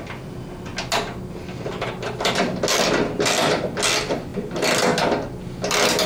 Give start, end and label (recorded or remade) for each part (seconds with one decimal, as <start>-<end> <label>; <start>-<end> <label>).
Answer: 0.0-6.1 recorded